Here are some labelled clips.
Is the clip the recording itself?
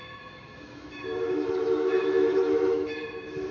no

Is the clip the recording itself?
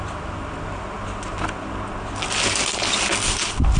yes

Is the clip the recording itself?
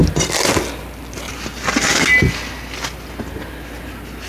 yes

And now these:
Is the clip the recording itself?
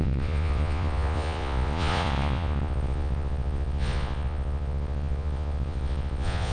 no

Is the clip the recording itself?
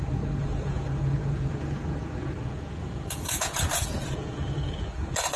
no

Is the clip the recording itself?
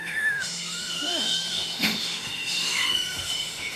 no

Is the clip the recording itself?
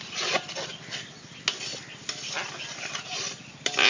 yes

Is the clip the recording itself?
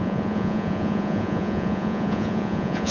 no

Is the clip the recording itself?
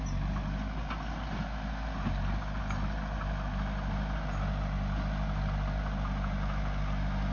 yes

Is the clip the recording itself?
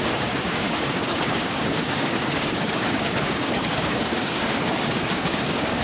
no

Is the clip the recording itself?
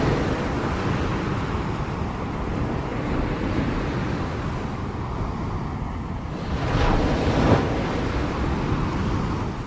yes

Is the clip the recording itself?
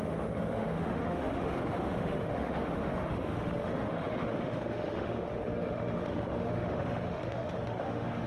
no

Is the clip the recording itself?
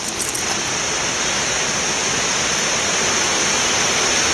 yes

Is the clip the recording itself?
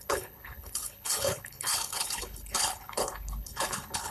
no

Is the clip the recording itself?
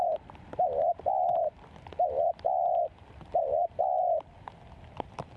no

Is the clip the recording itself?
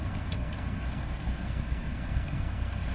no